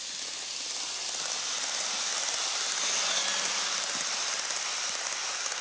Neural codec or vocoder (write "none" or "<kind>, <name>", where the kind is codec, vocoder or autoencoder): none